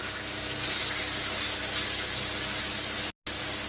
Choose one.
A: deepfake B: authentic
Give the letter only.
B